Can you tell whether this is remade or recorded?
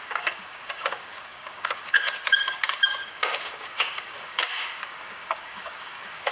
remade